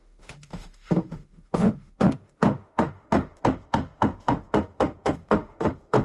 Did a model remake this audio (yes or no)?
yes